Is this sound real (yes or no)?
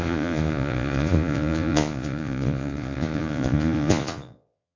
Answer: no